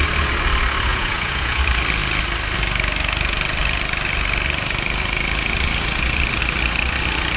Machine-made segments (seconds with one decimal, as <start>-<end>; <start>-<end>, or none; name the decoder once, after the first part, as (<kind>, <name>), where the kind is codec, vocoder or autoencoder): 0.9-1.6 (vocoder, Vocos)